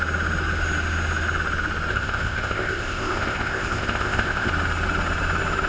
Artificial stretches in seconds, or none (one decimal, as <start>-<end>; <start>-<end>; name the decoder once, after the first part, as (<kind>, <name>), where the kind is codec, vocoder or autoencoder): 1.9-4.5 (codec, ZipCodec)

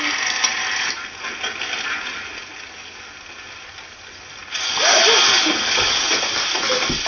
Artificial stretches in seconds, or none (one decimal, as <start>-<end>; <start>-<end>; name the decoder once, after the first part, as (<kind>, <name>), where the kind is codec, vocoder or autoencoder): none